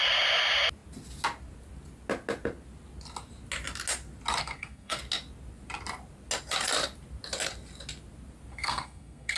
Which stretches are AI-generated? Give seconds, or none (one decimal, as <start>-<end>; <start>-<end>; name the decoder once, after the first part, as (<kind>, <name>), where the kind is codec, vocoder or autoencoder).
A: 4.4-5.0 (codec, SNAC); 8.5-9.4